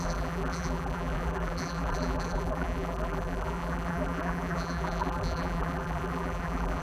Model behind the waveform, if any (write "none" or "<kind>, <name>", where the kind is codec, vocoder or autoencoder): vocoder, BigVGAN v2